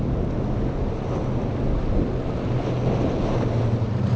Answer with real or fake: real